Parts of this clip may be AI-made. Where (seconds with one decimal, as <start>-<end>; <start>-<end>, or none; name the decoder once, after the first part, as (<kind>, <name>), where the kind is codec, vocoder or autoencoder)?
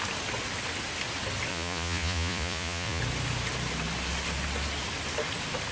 1.5-3.0 (vocoder, Vocos)